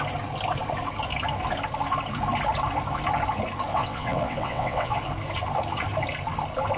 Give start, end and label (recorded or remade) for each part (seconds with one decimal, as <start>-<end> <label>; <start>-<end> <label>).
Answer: 0.0-3.7 recorded; 3.7-5.0 remade; 5.0-6.8 recorded